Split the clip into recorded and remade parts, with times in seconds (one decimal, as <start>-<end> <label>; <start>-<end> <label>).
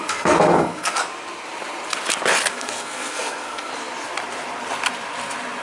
0.0-1.0 remade; 1.0-2.5 recorded; 2.5-3.7 remade; 3.7-5.6 recorded